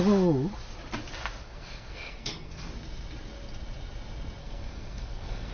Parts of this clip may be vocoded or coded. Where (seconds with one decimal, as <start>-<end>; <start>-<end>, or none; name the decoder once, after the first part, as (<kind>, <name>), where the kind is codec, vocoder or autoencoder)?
1.4-2.7 (codec, SNAC); 4.4-5.5